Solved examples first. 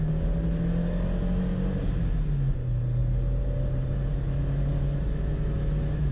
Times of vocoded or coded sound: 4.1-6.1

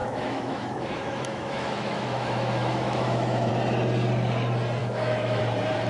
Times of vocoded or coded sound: 0.0-3.5; 4.8-5.4